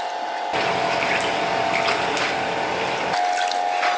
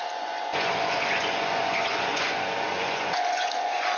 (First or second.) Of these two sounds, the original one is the first